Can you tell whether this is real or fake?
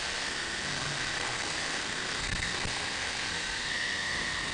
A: fake